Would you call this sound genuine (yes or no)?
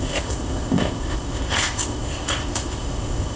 no